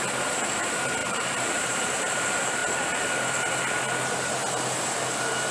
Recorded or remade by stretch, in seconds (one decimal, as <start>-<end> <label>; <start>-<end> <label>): 0.0-2.6 remade; 2.6-5.5 recorded